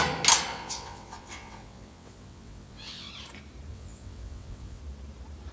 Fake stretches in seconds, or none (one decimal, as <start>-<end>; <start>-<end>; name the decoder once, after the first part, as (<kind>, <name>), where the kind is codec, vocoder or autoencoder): 0.5-3.1 (vocoder, WaveNeXt); 3.7-4.8